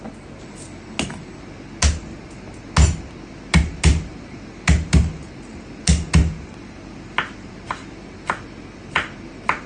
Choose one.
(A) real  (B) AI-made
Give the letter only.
A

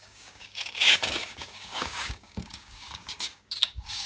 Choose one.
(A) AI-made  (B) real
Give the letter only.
A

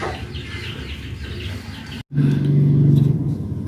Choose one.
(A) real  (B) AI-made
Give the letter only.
A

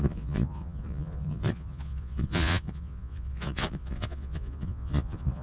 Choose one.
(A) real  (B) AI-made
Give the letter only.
B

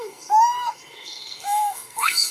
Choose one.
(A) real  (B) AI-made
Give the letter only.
B